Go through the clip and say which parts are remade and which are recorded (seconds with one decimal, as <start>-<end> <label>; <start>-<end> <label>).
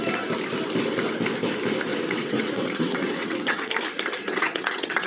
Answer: 0.0-1.9 recorded; 1.9-3.7 remade; 3.7-4.2 recorded; 4.2-5.1 remade